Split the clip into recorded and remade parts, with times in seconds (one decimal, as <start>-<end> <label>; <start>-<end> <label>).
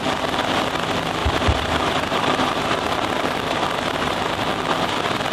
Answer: 0.0-1.2 recorded; 1.2-4.4 remade; 4.4-5.3 recorded